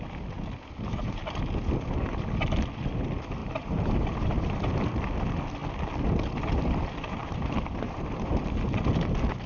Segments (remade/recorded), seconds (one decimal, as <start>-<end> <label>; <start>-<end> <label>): 0.0-3.4 recorded; 3.4-4.7 remade; 4.7-7.2 recorded; 7.2-8.1 remade; 8.1-9.5 recorded